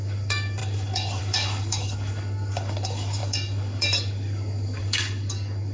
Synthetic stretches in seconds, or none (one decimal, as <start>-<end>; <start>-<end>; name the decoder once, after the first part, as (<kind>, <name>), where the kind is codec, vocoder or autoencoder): 0.0-5.7 (codec, DAC)